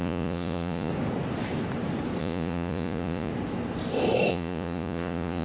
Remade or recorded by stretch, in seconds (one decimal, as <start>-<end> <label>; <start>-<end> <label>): 0.0-0.9 remade; 0.9-2.2 recorded; 2.2-3.3 remade; 3.3-4.3 recorded; 4.3-5.4 remade